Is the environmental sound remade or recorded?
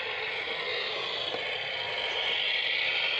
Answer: recorded